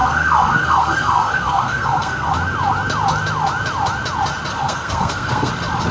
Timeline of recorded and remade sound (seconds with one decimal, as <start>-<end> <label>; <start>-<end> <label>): 0.0-2.3 remade; 2.3-4.5 recorded; 4.5-5.5 remade; 5.5-5.9 recorded